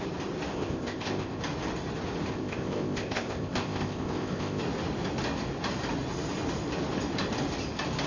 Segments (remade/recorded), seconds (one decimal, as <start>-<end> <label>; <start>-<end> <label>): 0.0-0.5 recorded; 0.5-1.4 remade; 1.4-2.3 recorded; 2.3-4.6 remade; 4.6-8.1 recorded